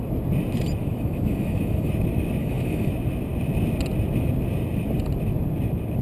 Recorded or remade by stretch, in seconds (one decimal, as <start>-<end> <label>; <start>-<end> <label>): 0.0-0.8 recorded; 0.8-1.9 remade; 1.9-2.4 recorded; 2.4-2.9 remade; 2.9-6.0 recorded